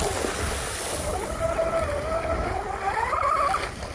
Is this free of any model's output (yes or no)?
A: yes